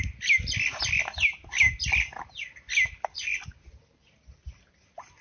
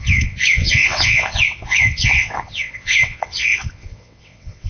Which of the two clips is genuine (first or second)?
first